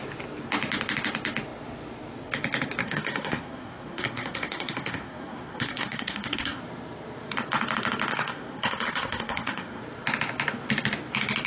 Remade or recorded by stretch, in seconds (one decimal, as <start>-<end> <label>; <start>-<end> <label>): 0.0-2.8 recorded; 2.8-6.6 remade; 6.6-8.1 recorded; 8.1-9.8 remade; 9.8-11.5 recorded